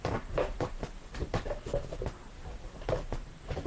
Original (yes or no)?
no